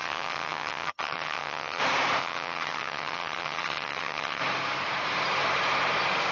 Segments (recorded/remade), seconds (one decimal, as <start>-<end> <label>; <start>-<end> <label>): 0.0-1.8 remade; 1.8-2.2 recorded; 2.2-4.4 remade; 4.4-6.3 recorded